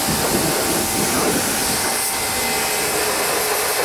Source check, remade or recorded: recorded